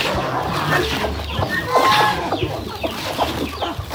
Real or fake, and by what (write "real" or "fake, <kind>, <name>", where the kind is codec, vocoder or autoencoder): real